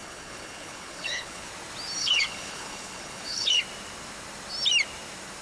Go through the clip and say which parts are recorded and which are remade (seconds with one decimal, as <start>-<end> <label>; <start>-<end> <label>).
0.0-1.5 remade; 1.5-2.0 recorded; 2.0-3.6 remade; 3.6-5.4 recorded